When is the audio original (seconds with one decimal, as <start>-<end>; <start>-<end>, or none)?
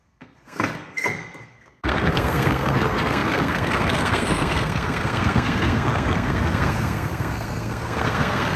none